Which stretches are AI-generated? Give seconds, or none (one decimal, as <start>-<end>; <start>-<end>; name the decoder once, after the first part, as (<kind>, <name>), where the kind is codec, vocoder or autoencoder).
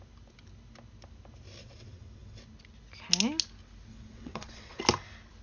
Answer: 1.6-2.4 (vocoder, WaveNeXt); 3.9-4.8